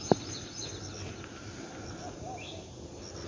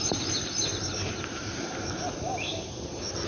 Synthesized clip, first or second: second